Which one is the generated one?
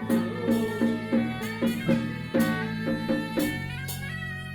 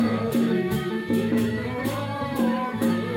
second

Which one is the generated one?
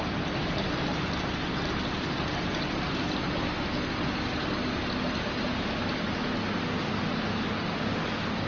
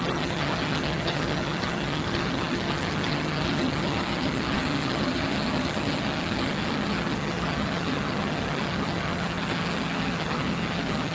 second